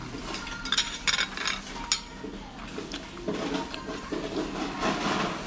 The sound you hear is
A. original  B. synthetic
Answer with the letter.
A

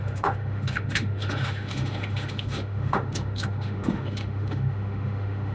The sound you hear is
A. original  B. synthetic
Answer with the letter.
B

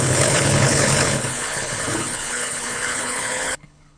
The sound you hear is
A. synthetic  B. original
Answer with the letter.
A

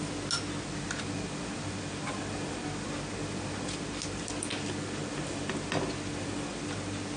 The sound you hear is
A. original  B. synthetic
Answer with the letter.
A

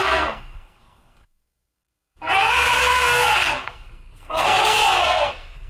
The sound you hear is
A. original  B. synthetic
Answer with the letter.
B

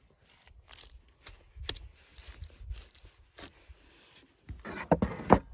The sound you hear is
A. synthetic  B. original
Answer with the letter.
B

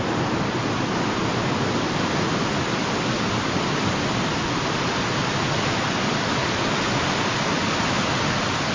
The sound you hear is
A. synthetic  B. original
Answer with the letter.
B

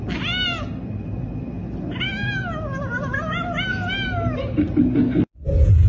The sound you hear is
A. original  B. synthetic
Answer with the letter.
A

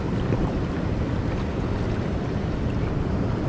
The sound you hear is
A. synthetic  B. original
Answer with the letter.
B